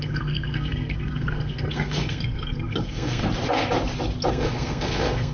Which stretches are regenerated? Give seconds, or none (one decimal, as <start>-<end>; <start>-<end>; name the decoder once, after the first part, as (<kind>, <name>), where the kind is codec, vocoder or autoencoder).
0.0-3.2 (codec, SNAC); 4.3-5.3